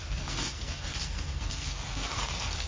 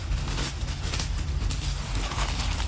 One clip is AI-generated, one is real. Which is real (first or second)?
second